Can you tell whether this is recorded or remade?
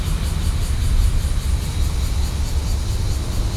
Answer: recorded